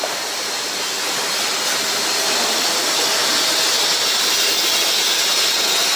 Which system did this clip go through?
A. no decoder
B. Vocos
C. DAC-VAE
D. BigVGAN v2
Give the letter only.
A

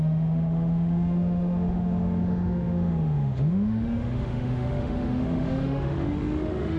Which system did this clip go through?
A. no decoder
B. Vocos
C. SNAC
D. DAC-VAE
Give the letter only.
D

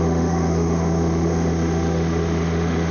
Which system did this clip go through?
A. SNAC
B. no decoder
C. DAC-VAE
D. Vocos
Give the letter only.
C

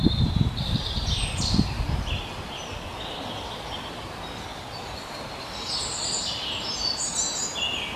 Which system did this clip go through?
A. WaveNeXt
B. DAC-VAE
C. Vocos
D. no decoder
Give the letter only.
D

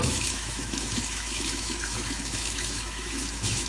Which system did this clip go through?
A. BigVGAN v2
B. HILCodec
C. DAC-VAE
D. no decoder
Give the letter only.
C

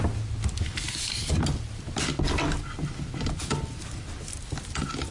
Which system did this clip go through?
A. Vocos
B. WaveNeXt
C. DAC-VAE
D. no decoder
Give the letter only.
D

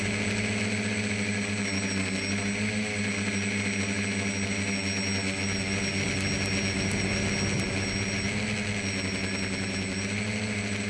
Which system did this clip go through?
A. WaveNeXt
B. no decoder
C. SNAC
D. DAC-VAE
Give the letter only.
B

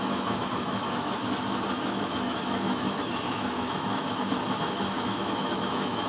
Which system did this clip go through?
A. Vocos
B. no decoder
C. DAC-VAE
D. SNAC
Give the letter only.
C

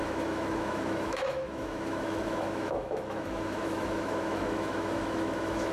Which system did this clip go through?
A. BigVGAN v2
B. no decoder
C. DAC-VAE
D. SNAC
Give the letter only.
C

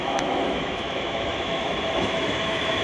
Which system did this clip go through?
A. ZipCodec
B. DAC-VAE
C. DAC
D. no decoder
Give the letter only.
B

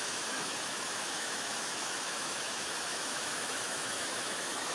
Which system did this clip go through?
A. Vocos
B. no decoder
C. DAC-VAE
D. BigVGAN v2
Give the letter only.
C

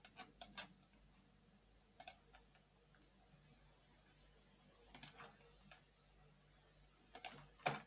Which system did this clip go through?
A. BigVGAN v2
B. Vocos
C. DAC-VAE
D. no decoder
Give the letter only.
D